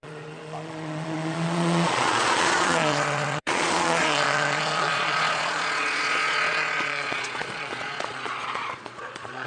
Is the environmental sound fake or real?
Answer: fake